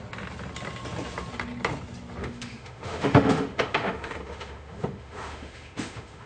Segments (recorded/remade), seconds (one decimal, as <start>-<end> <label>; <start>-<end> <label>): 0.0-2.2 recorded; 2.2-6.3 remade